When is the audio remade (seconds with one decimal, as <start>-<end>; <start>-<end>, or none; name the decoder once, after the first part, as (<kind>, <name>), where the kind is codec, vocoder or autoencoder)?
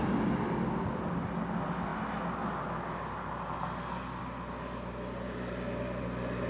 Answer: none